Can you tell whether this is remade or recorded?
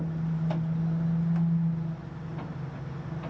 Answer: recorded